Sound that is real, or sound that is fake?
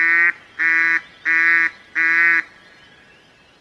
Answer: real